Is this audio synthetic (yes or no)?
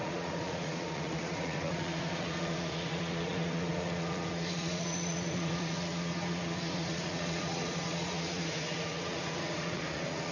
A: yes